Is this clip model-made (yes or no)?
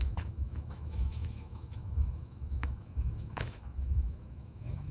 yes